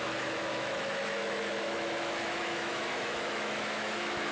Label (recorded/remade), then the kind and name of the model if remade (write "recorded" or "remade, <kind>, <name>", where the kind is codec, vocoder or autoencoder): remade, autoencoder, DAC-VAE